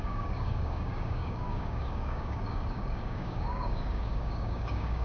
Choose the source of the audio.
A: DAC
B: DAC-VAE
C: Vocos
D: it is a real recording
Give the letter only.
A